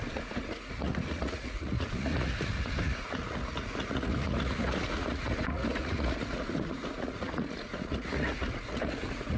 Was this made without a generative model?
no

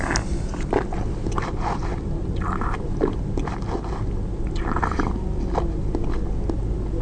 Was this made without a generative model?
yes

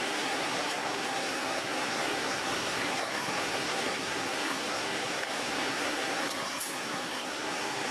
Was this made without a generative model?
no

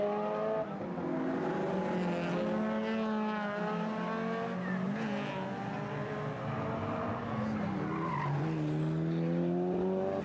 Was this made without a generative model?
yes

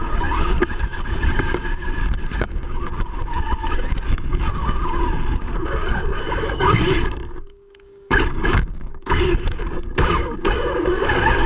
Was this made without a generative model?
no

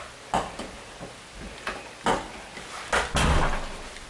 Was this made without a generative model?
yes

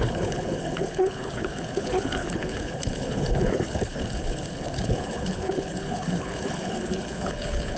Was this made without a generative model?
no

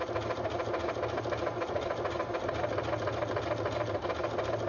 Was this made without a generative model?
yes